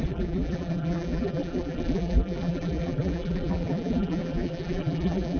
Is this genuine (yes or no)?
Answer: no